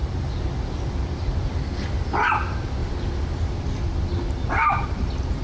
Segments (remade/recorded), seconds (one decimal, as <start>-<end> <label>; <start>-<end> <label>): 0.0-2.8 recorded; 2.8-5.4 remade